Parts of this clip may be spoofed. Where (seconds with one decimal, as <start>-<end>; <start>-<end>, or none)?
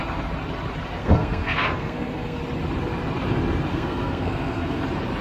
1.0-2.4; 3.7-4.8